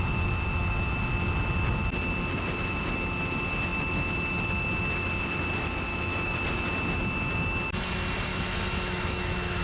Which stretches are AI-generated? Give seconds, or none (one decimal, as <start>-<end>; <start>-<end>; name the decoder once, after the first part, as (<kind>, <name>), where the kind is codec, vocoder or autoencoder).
5.9-6.4 (autoencoder, DAC-VAE); 8.3-9.6